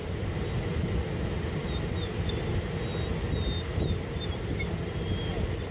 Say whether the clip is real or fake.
real